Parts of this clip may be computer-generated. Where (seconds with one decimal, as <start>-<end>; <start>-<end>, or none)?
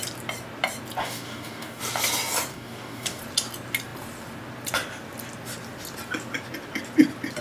1.0-1.8; 2.5-3.2